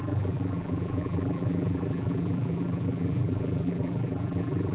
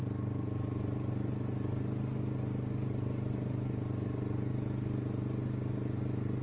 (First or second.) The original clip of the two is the second